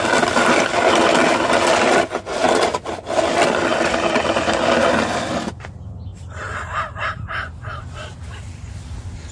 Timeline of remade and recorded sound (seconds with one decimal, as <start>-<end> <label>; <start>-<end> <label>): 0.0-9.3 recorded